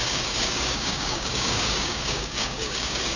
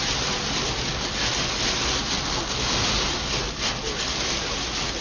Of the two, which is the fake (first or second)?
first